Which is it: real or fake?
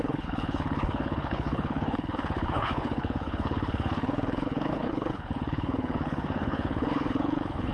fake